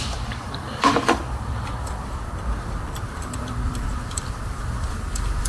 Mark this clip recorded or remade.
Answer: remade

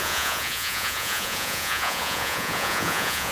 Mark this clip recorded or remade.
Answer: remade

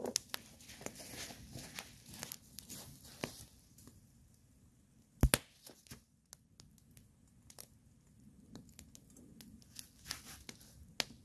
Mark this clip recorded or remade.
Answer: recorded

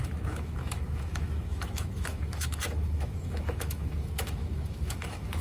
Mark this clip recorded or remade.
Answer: remade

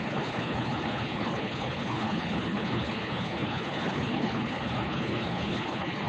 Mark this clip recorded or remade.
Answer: remade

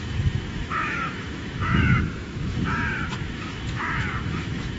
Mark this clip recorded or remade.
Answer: remade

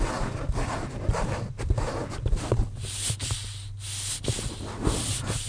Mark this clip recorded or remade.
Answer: recorded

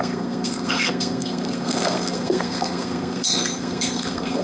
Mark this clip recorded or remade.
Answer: remade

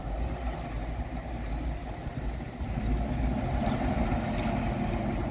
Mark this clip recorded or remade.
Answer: recorded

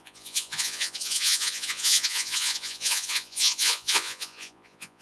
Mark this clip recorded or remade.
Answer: remade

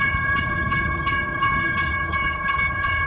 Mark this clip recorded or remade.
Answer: remade